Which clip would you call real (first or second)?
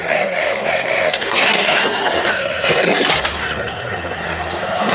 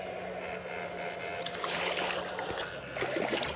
second